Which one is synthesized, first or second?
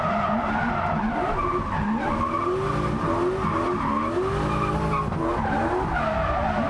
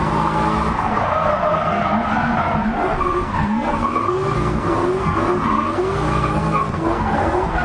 second